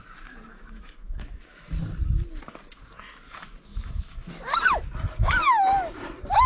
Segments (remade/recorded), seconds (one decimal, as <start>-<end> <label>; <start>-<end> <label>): 0.0-0.5 recorded; 0.5-1.7 remade; 1.7-3.7 recorded; 3.7-4.3 remade; 4.3-6.5 recorded